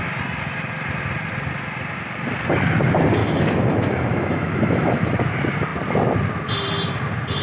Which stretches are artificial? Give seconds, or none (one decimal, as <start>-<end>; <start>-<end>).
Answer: 3.2-5.2